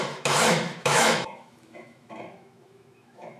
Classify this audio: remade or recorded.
remade